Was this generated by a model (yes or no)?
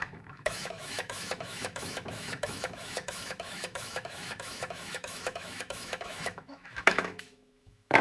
yes